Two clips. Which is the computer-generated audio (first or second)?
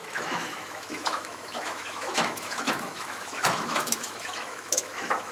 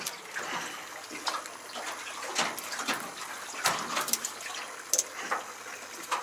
first